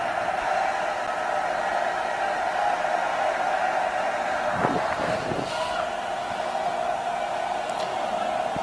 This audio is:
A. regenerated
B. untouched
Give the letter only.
B